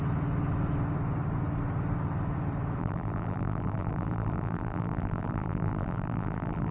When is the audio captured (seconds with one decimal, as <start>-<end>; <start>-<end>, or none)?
0.0-2.8